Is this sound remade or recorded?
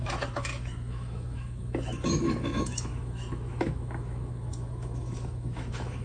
remade